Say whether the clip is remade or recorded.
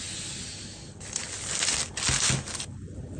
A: recorded